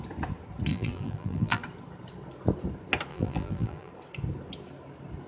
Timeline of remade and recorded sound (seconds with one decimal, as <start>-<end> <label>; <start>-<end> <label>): 0.0-0.7 recorded; 0.7-1.6 remade; 1.6-3.1 recorded; 3.1-3.9 remade; 3.9-5.3 recorded